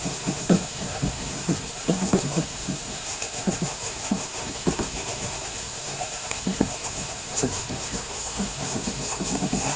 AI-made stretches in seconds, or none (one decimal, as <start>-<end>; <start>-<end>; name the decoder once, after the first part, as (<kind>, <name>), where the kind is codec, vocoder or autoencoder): 0.0-9.8 (codec, SNAC)